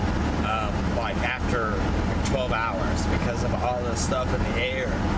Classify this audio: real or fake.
real